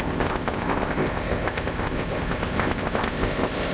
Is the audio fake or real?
fake